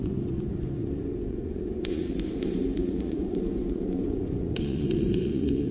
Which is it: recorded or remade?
remade